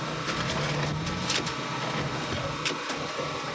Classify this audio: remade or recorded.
recorded